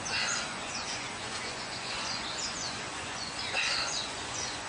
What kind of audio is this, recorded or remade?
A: remade